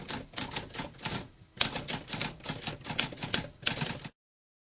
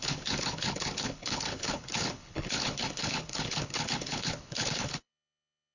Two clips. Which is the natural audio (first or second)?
first